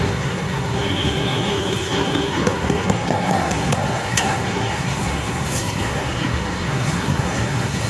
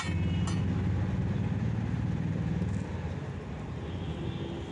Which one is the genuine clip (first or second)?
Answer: second